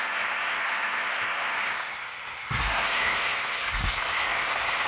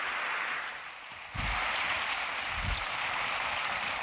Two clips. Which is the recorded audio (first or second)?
second